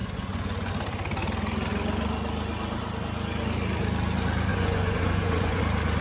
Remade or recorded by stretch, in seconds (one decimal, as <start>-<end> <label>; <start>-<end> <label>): 0.0-0.7 remade; 0.7-4.5 recorded; 4.5-5.6 remade; 5.6-6.0 recorded